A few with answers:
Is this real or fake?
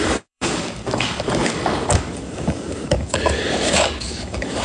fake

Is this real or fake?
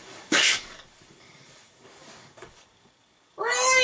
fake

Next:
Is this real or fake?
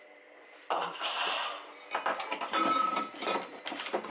real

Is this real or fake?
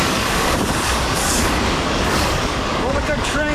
fake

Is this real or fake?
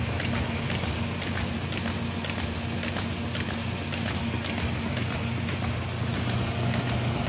real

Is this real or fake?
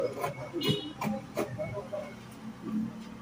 real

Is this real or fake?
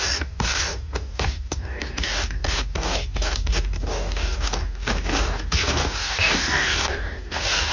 fake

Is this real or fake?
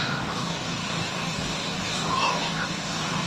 fake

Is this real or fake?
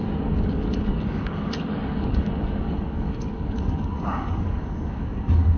fake